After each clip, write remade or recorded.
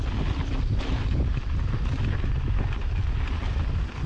recorded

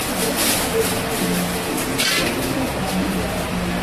recorded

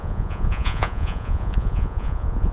remade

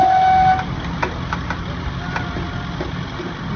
recorded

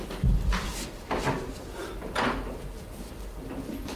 recorded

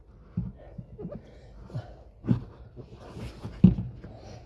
recorded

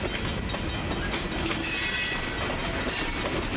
recorded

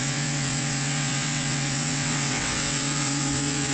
remade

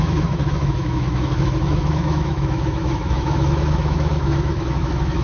remade